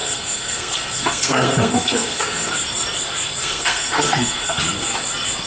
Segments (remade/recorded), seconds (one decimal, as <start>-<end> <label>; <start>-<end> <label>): 0.0-2.5 remade; 2.5-3.4 recorded; 3.4-4.6 remade; 4.6-5.5 recorded